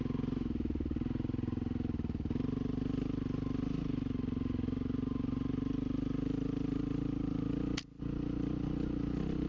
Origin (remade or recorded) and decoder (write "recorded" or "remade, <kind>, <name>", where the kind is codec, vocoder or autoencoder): recorded